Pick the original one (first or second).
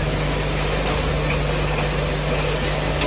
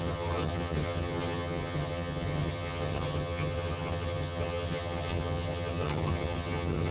first